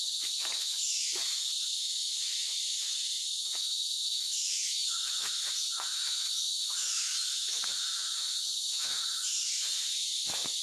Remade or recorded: remade